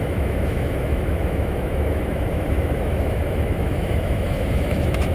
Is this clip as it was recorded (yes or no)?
no